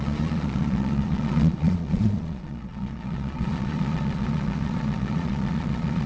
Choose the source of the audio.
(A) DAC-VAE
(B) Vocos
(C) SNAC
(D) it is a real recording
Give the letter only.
B